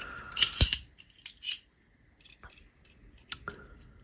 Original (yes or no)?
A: yes